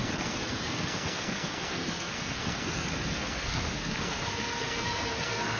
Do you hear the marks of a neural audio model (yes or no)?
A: yes